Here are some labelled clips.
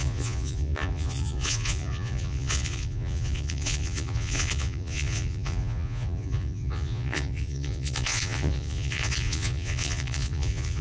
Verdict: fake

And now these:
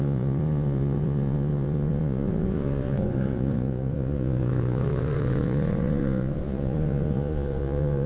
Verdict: fake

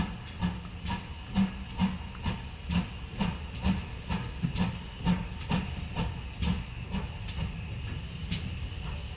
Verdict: real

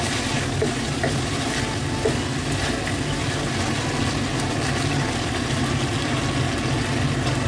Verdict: real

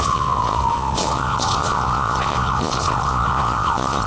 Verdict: fake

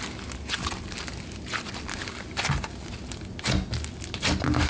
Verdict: real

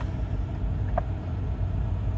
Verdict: real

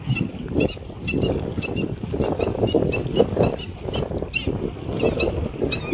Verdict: real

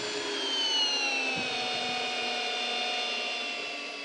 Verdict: real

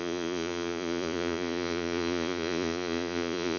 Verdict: fake